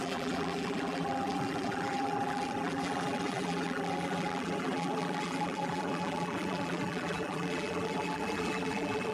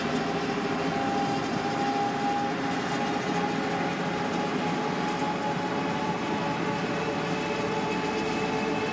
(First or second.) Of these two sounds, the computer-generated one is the first